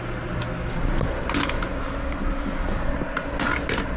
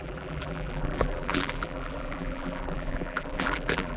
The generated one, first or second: second